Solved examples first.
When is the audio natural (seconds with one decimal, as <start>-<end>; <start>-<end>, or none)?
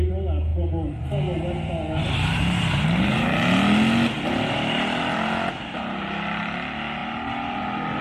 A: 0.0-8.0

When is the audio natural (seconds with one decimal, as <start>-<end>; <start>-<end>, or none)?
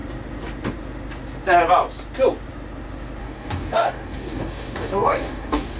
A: 0.0-3.2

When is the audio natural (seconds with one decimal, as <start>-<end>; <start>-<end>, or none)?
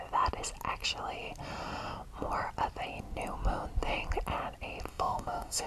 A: 0.0-4.9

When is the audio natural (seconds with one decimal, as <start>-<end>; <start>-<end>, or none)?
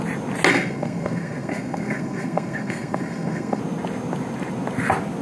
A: 0.0-0.5; 3.6-5.2